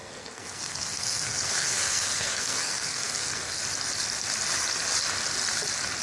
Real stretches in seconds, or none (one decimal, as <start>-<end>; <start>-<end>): 3.6-6.0